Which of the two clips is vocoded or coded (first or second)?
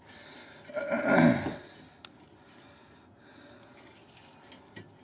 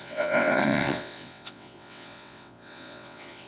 second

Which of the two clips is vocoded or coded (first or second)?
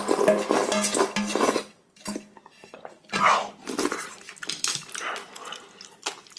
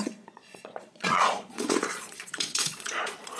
second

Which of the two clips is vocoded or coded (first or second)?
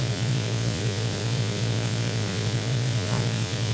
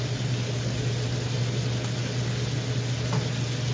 first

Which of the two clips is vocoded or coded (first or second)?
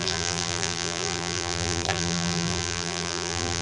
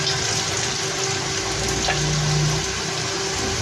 first